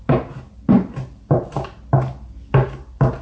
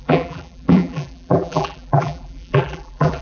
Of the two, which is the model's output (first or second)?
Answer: second